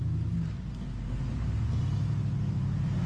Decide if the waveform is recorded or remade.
recorded